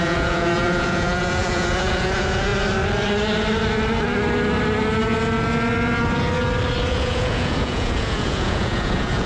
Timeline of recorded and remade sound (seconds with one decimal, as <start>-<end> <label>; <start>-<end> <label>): 0.0-2.5 remade; 2.5-6.9 recorded; 6.9-9.3 remade